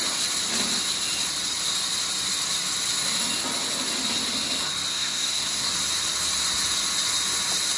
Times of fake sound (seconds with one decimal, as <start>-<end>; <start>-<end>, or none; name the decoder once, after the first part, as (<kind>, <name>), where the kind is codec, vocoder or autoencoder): 4.9-5.7 (codec, SNAC)